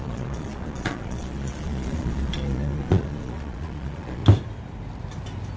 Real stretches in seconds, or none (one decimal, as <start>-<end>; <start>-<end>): 4.2-5.6